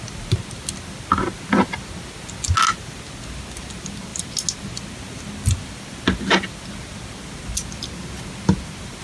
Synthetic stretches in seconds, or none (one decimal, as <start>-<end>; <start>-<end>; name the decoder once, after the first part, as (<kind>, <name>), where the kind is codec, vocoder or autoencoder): none